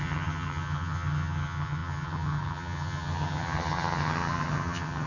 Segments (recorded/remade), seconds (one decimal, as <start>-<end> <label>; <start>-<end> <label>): 0.0-5.1 remade